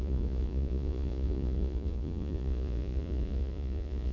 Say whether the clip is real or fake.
fake